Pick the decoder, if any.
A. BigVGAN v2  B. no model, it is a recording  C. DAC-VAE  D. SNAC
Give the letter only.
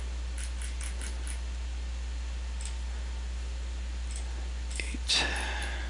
B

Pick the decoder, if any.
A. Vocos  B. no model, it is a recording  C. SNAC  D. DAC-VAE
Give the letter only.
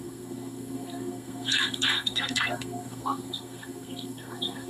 C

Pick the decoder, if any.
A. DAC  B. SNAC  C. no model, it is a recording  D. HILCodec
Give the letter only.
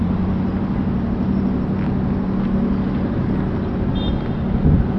C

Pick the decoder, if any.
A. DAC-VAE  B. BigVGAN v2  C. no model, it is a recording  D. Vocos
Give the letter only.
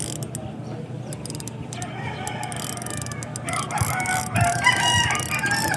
C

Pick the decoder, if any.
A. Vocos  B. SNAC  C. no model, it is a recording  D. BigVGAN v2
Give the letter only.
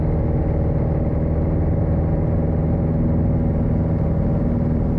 C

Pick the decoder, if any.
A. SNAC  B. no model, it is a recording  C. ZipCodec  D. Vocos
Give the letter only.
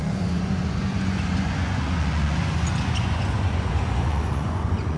D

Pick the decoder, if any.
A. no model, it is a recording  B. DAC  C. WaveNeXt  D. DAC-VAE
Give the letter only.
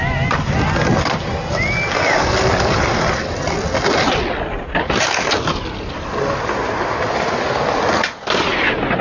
A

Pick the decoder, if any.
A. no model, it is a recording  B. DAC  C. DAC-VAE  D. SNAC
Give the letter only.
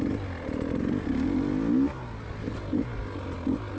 A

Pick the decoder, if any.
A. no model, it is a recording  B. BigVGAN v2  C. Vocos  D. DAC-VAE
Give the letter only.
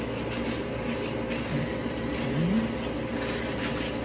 A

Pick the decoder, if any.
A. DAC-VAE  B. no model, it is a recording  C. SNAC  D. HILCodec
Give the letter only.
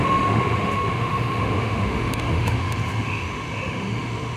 A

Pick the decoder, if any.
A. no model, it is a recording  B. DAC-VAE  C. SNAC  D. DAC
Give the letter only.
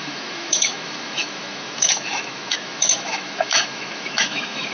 B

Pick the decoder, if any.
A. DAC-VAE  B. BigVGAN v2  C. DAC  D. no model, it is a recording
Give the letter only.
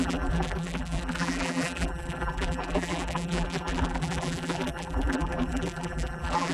B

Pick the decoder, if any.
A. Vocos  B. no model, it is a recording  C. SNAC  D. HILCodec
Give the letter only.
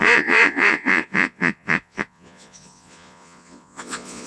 A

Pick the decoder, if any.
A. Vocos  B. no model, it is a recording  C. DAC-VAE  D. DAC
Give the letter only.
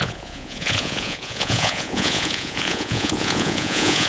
A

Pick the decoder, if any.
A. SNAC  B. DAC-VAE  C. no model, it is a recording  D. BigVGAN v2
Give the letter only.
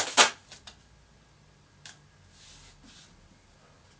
C